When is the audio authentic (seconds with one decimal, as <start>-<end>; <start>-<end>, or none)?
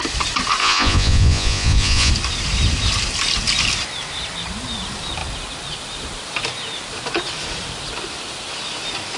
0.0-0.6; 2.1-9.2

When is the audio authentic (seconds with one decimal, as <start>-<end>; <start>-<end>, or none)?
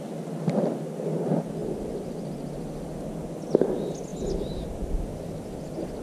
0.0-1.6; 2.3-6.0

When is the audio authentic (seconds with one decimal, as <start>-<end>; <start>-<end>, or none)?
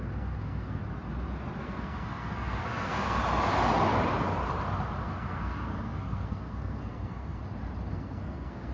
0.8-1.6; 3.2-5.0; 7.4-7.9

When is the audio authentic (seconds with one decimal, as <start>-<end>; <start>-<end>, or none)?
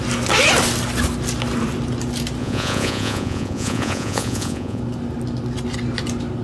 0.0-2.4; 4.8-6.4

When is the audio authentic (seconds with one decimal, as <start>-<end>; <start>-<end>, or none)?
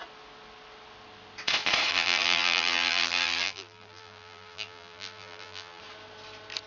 0.0-1.9; 5.8-6.7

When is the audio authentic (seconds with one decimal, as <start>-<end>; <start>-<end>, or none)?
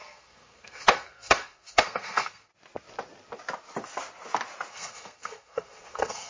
2.5-4.7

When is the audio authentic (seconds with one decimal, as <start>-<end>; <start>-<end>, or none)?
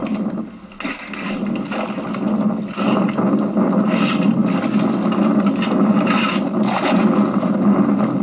0.0-8.2